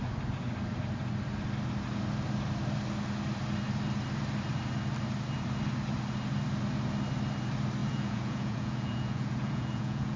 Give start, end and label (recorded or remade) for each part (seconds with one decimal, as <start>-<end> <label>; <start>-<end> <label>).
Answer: 0.0-7.8 recorded; 7.8-10.2 remade